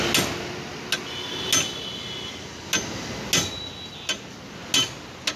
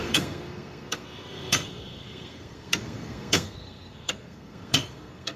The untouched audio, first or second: first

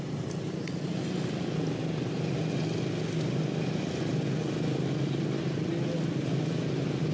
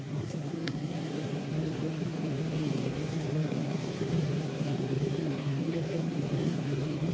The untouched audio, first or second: first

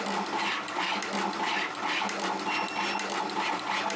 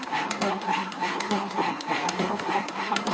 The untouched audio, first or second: first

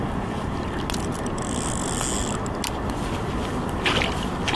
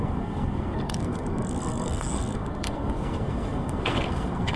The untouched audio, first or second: first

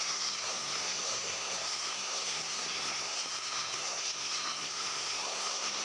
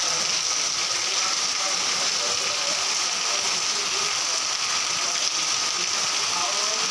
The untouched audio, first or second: second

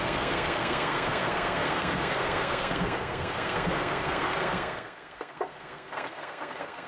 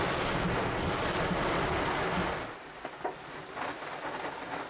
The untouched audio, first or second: second